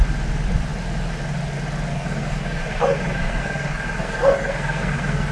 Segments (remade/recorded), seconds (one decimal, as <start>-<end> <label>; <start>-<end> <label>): 0.0-1.9 recorded; 1.9-5.3 remade